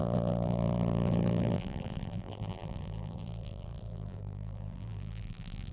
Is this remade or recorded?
remade